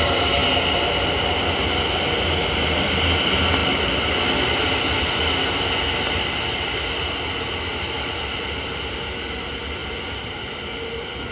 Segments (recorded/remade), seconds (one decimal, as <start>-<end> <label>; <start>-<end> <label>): 0.0-11.3 recorded